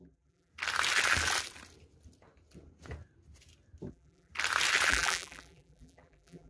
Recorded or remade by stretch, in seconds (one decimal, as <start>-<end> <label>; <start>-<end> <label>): 0.0-0.5 remade; 0.5-3.9 recorded; 3.9-4.3 remade; 4.3-4.9 recorded; 4.9-6.5 remade